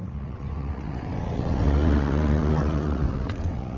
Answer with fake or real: fake